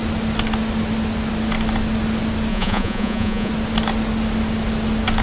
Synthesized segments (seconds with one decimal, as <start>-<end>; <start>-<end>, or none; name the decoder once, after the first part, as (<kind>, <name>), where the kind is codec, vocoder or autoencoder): 2.5-3.5 (vocoder, Vocos)